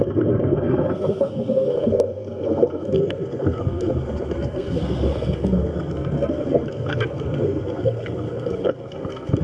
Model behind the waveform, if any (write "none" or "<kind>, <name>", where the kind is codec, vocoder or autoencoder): codec, SNAC